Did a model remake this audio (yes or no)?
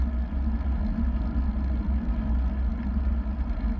no